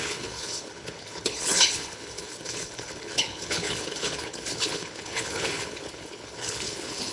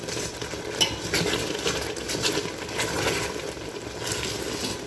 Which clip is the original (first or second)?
second